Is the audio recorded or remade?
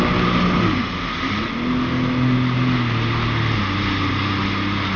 recorded